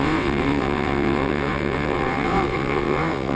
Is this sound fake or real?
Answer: fake